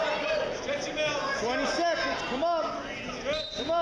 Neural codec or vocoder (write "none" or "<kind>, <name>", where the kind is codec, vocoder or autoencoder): none